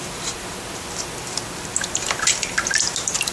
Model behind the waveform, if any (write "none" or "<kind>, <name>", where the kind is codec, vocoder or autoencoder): vocoder, BigVGAN v2